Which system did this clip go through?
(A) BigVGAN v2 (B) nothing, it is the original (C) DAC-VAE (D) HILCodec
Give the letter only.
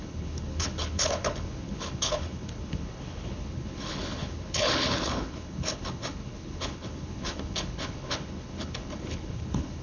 D